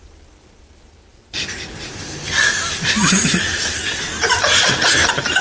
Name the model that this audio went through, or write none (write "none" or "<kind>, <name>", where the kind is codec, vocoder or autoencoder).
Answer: vocoder, BigVGAN v2